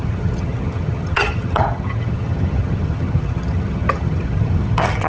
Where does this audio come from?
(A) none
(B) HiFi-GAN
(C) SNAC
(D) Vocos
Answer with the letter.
B